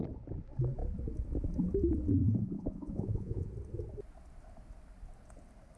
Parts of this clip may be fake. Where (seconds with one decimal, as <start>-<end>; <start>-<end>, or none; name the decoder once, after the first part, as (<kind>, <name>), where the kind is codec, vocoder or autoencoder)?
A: 2.2-3.5 (vocoder, Vocos)